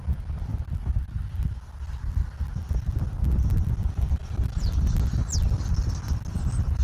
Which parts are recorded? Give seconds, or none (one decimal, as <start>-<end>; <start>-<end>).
0.0-6.8